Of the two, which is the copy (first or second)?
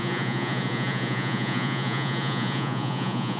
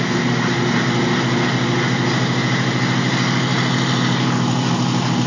first